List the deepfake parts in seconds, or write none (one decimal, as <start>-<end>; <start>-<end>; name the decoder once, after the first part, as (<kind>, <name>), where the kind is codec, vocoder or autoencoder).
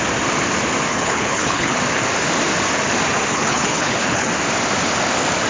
0.9-1.8 (codec, HILCodec); 3.3-4.3